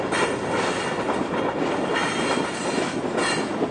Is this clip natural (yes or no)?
yes